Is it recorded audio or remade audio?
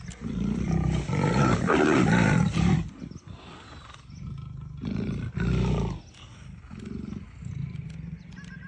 recorded